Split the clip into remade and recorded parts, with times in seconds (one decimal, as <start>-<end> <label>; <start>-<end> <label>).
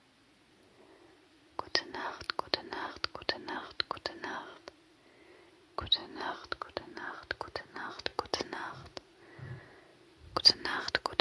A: 0.0-11.2 recorded